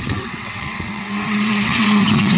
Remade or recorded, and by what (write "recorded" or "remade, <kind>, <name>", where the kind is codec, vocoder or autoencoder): remade, vocoder, WaveNeXt